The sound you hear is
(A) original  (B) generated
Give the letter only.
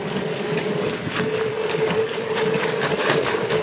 B